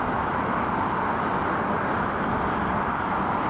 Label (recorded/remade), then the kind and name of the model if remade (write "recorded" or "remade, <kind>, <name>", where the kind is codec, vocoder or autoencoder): recorded